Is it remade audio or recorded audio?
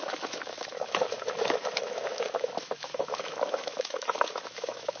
remade